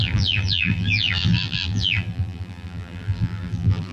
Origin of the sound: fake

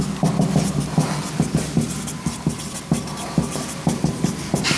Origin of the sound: real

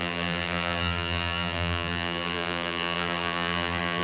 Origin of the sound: fake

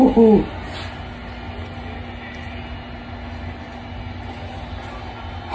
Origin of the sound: real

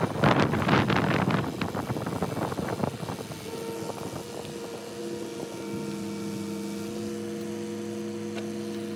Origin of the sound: real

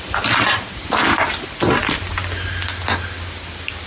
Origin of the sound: real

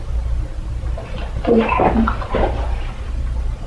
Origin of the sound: real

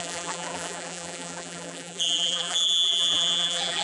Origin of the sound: fake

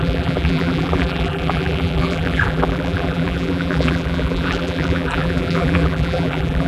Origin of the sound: fake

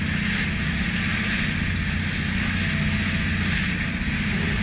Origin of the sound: real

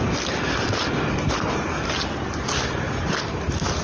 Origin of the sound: real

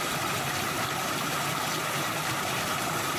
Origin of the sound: fake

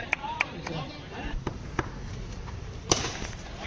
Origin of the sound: fake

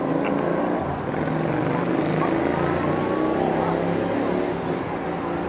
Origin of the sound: real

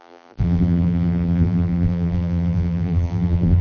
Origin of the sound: fake